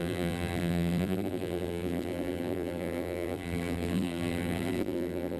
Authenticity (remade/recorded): remade